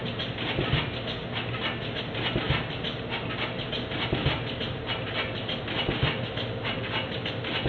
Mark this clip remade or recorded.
recorded